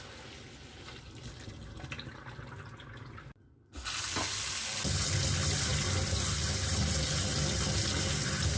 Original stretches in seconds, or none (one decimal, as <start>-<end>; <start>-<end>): 0.0-8.6